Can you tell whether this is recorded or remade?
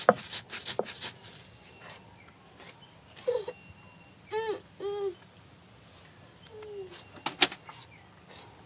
recorded